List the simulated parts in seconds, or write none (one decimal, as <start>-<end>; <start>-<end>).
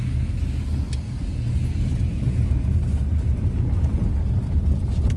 none